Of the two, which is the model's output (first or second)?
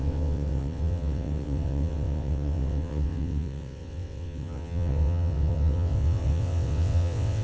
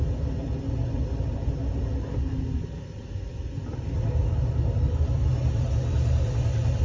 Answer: first